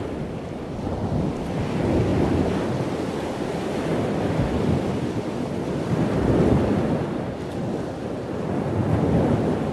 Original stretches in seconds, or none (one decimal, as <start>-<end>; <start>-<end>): 0.0-9.7